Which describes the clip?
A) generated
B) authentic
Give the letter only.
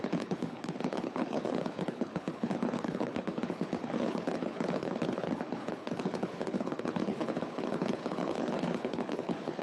A